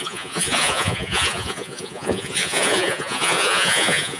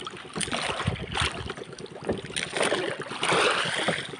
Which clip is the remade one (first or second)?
first